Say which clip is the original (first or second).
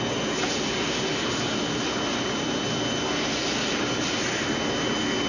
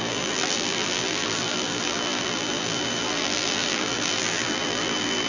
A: first